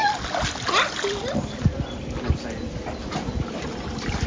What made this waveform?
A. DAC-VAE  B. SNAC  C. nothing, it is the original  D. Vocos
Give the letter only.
C